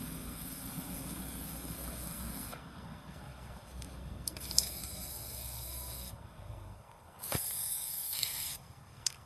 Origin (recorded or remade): remade